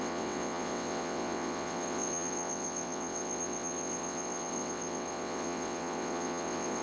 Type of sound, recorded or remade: remade